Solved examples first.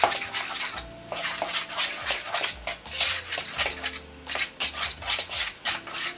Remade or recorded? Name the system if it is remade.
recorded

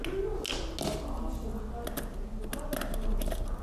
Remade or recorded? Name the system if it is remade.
recorded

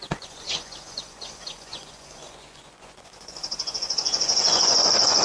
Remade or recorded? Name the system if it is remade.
remade, vocoder, Vocos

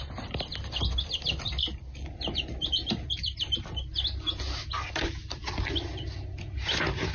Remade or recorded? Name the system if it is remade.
recorded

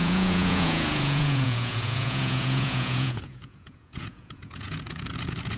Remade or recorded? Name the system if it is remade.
remade, vocoder, Vocos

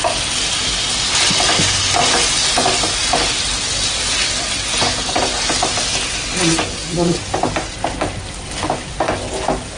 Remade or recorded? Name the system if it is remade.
recorded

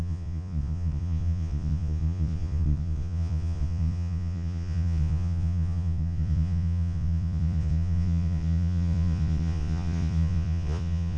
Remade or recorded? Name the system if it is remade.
remade, vocoder, Vocos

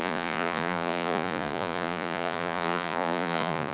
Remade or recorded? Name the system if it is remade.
remade, vocoder, Vocos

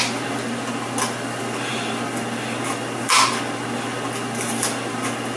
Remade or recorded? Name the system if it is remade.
recorded